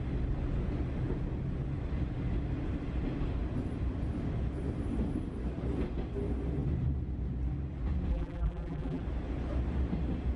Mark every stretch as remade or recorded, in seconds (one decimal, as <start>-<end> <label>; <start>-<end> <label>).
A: 0.0-8.1 recorded; 8.1-9.0 remade; 9.0-10.4 recorded